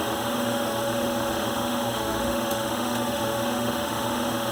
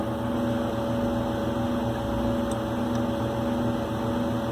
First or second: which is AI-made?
first